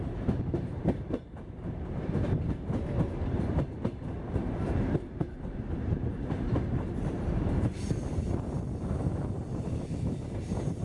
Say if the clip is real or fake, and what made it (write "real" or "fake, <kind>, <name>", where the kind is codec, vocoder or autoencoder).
fake, vocoder, BigVGAN v2